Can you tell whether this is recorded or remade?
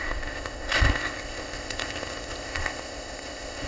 remade